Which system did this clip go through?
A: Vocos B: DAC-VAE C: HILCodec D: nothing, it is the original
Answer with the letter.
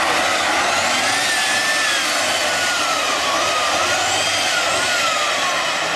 D